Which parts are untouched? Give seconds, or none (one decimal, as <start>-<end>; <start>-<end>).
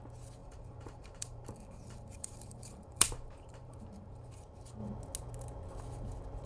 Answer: 0.0-0.4; 4.3-6.5